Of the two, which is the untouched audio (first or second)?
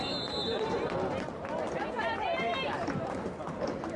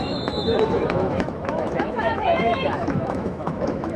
first